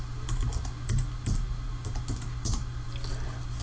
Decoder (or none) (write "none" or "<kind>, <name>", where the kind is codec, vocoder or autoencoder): none